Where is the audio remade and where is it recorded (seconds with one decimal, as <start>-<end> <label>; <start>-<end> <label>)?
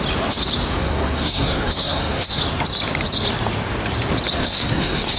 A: 0.0-0.7 recorded; 0.7-2.4 remade; 2.4-4.4 recorded; 4.4-5.2 remade